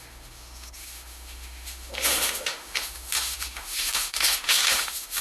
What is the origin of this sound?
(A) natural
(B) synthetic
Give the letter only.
B